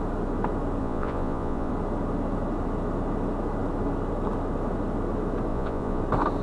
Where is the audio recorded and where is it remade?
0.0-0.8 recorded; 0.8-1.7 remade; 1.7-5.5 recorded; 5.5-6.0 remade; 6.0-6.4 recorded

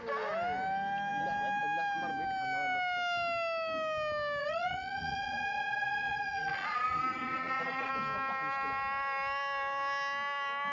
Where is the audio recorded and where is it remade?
0.0-4.4 recorded; 4.4-7.9 remade; 7.9-10.7 recorded

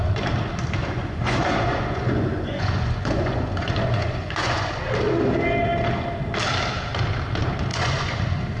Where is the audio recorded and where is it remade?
0.0-0.8 recorded; 0.8-4.8 remade; 4.8-7.7 recorded; 7.7-8.2 remade; 8.2-8.6 recorded

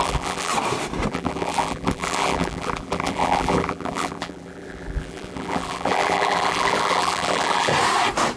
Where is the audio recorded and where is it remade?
0.0-0.5 remade; 0.5-1.1 recorded; 1.1-7.7 remade; 7.7-8.4 recorded